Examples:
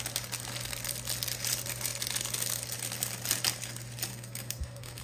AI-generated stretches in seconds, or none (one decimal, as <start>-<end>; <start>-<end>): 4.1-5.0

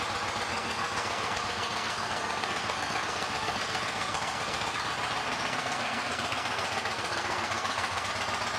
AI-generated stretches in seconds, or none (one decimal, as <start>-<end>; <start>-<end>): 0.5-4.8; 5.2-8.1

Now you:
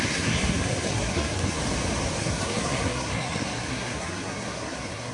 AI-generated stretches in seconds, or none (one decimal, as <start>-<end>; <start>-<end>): 0.0-1.6; 2.2-5.1